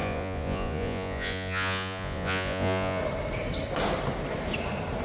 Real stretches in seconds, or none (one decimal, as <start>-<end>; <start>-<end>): 3.0-5.0